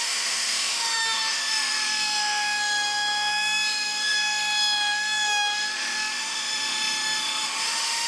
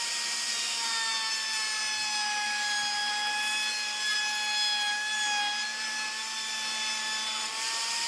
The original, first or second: second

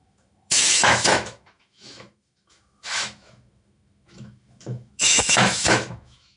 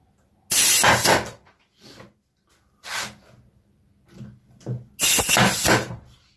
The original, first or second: second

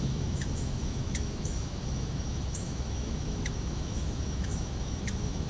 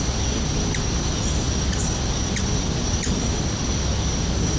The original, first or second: second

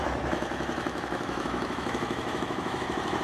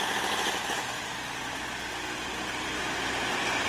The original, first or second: second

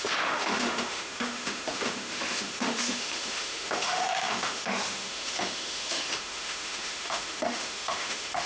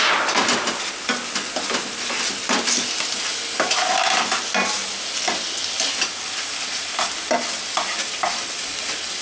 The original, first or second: second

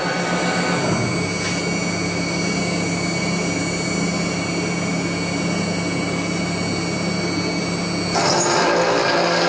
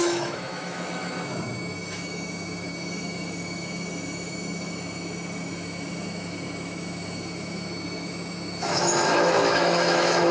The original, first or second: first